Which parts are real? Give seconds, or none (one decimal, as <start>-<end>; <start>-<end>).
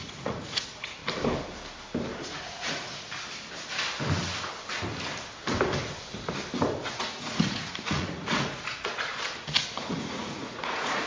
1.0-2.2; 2.9-6.8; 9.1-9.9